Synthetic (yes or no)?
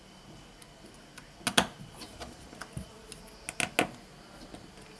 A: no